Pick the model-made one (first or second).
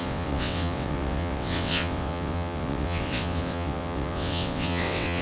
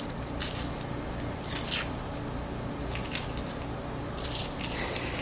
first